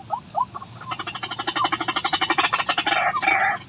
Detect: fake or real real